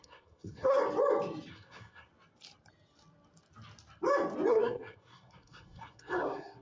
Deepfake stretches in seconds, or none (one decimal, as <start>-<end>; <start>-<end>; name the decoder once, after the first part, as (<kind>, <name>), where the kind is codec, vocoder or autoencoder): 0.0-0.8 (codec, SNAC); 1.5-2.1; 4.5-6.6